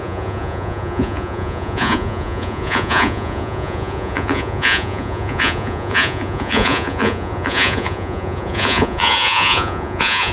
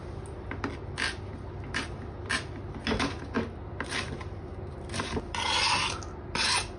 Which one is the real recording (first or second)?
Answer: second